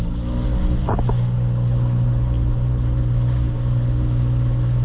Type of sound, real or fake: real